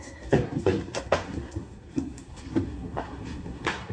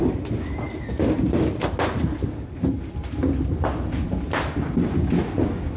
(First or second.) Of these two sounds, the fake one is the first